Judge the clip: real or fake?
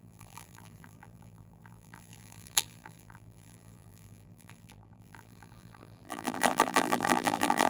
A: fake